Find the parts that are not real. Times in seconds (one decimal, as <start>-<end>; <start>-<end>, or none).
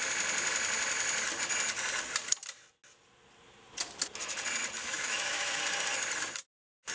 4.8-5.6